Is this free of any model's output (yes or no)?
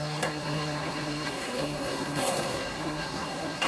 no